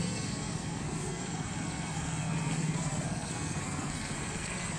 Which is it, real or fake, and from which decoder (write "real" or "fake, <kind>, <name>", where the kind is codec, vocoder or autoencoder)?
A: fake, codec, SNAC